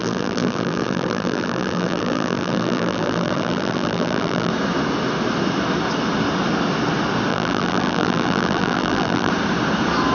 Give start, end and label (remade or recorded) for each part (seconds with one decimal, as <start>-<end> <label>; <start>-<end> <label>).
0.0-4.5 remade; 4.5-7.3 recorded; 7.3-9.3 remade; 9.3-10.1 recorded

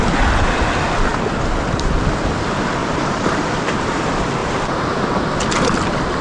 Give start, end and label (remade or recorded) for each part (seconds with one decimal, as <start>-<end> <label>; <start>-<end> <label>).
0.0-2.8 recorded; 2.8-4.0 remade; 4.0-4.4 recorded; 4.4-5.2 remade; 5.2-6.2 recorded

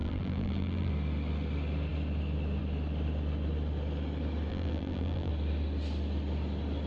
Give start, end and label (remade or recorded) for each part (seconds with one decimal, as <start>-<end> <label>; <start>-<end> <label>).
0.0-0.9 remade; 0.9-4.5 recorded; 4.5-5.3 remade; 5.3-6.9 recorded

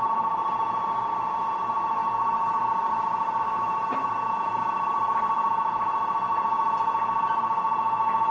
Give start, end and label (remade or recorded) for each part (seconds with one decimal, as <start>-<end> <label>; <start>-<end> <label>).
0.0-6.3 remade; 6.3-7.4 recorded; 7.4-8.3 remade

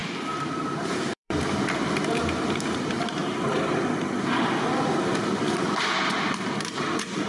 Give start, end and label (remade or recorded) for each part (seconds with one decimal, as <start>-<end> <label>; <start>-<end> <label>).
0.0-3.2 remade; 3.2-4.9 recorded; 4.9-7.3 remade

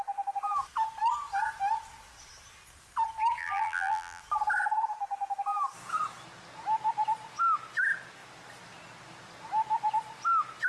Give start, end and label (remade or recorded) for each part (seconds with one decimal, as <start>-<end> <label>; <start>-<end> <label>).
0.0-3.4 recorded; 3.4-4.2 remade; 4.2-10.7 recorded